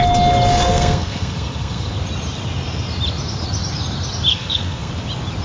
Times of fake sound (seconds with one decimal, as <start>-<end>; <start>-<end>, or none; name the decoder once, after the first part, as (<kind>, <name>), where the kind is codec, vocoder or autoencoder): 0.5-1.9 (codec, SNAC); 4.3-4.9